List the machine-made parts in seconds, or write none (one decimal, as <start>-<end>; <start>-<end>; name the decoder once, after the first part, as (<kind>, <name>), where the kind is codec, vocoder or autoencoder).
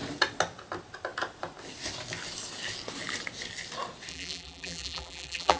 4.1-5.6 (vocoder, BigVGAN v2)